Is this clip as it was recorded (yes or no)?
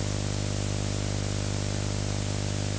yes